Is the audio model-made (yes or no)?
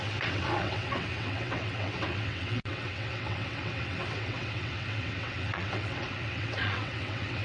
yes